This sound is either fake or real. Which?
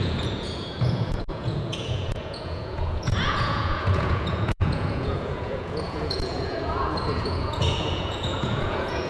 fake